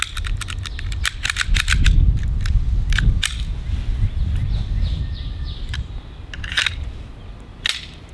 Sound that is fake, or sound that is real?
real